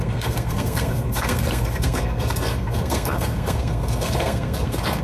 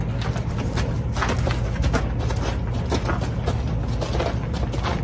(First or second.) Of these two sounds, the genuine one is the second